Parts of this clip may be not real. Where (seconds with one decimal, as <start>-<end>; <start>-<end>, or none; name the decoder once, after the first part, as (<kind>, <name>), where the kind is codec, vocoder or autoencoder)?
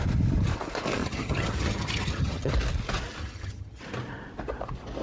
1.0-2.5 (vocoder, HiFi-GAN); 3.2-3.8